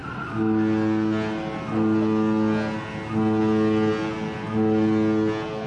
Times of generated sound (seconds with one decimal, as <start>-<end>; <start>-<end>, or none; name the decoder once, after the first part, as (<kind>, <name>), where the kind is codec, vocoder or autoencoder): none